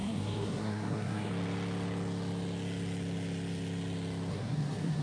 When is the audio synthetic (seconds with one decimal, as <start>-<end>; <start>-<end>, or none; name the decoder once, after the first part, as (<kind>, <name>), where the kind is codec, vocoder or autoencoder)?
0.0-1.3 (codec, SNAC); 4.3-5.0